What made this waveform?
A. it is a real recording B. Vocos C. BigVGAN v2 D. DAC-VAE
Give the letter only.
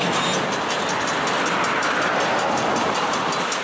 A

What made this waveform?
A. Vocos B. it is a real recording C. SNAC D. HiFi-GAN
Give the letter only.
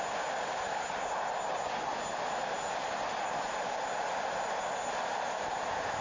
B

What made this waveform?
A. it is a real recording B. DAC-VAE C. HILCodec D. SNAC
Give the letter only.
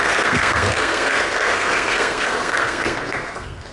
D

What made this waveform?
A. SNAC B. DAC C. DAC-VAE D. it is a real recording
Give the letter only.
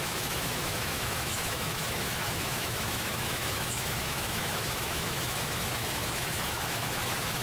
C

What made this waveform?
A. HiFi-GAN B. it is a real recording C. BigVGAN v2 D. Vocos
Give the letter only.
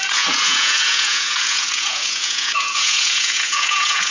D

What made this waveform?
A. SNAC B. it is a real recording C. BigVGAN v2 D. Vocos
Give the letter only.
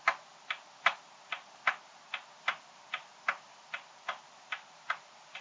B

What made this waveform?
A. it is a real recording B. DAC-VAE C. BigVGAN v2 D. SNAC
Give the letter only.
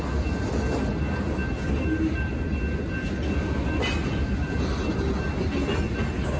A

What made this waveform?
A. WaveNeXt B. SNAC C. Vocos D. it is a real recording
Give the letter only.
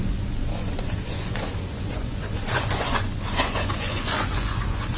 C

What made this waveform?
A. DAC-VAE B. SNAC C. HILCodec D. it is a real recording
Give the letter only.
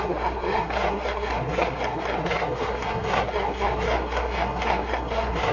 B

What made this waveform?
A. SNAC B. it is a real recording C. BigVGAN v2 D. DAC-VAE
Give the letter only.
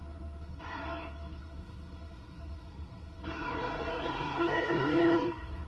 A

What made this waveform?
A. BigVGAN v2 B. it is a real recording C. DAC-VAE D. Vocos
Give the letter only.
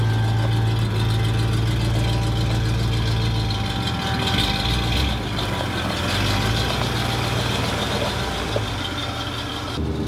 B